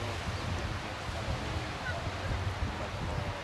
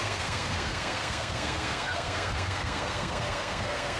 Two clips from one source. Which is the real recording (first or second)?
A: first